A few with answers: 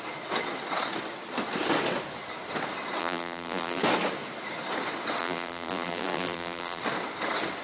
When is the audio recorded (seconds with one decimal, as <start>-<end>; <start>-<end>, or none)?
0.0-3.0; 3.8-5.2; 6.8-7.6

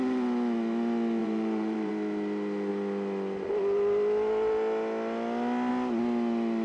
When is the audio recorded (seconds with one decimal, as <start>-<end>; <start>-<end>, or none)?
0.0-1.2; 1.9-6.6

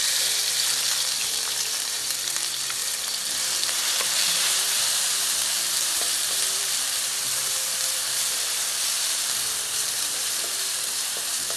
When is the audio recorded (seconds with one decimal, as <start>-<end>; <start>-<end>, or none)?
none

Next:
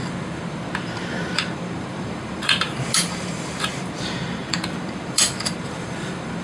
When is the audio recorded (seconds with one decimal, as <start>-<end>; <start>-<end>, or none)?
0.0-0.5

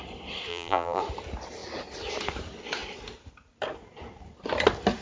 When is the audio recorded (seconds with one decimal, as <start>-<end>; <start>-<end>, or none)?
0.0-0.5; 1.0-5.0

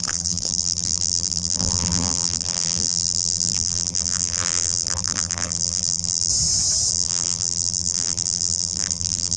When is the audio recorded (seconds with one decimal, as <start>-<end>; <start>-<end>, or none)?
6.3-6.9